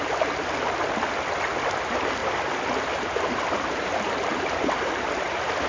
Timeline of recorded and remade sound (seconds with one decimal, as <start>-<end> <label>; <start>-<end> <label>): 0.0-5.7 recorded